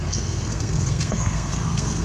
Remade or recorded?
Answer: remade